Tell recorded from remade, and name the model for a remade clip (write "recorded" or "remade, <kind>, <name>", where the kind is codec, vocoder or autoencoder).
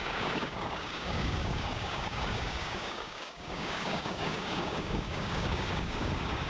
remade, codec, DAC